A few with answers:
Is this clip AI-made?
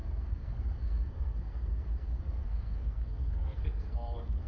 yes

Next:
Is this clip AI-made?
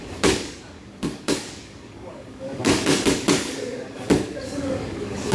yes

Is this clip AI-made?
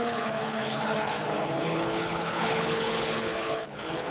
yes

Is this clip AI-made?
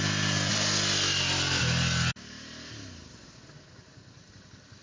no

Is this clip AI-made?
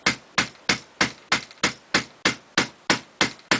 no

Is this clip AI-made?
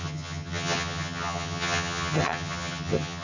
yes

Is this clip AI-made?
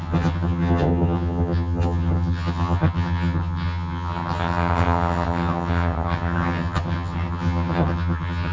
yes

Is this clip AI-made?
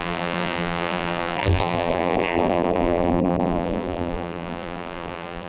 yes